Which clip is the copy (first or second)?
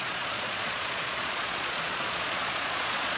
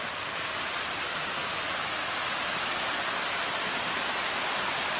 first